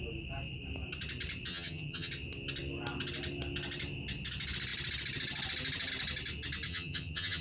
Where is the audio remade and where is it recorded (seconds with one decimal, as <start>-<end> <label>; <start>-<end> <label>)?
0.0-1.5 recorded; 1.5-2.1 remade; 2.1-6.7 recorded; 6.7-7.4 remade